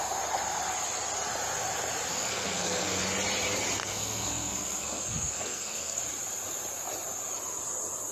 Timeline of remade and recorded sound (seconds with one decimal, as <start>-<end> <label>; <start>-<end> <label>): 0.0-2.1 recorded; 2.1-3.0 remade; 3.0-3.8 recorded; 3.8-6.0 remade; 6.0-8.1 recorded